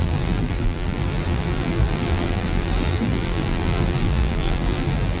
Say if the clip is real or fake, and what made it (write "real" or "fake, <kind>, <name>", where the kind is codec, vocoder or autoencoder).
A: fake, vocoder, BigVGAN v2